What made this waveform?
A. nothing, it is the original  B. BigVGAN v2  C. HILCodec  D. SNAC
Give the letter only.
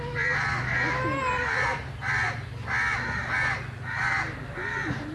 A